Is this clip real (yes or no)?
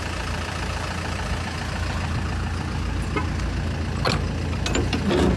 yes